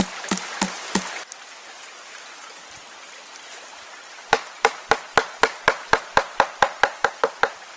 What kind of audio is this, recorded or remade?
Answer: recorded